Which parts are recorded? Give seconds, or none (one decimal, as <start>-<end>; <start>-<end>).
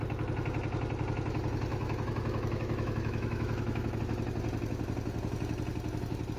0.0-1.7; 4.0-6.4